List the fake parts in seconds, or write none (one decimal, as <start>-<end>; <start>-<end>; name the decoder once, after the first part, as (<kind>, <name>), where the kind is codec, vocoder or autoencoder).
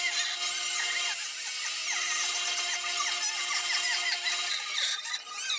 none